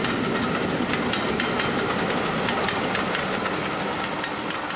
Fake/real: real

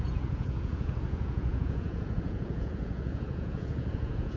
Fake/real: fake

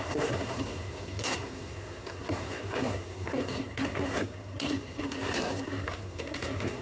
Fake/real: fake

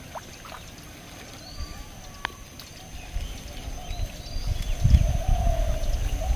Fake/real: real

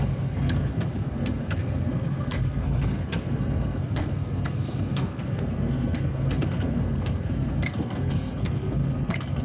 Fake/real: fake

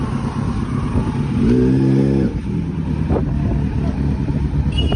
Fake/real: real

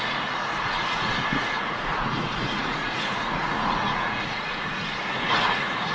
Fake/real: fake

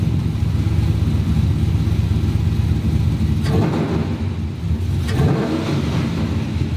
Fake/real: real